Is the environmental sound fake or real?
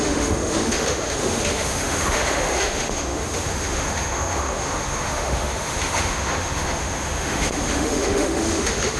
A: fake